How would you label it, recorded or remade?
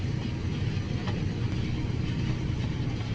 recorded